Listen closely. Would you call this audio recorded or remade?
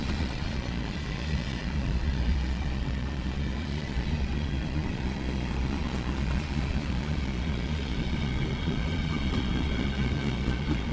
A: remade